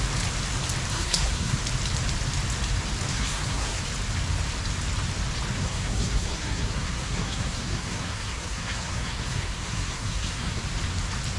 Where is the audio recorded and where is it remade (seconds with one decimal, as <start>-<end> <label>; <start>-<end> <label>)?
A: 0.0-0.9 recorded; 0.9-1.6 remade; 1.6-3.1 recorded; 3.1-3.8 remade; 3.8-5.6 recorded; 5.6-10.6 remade; 10.6-11.4 recorded